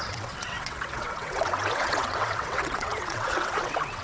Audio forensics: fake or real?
fake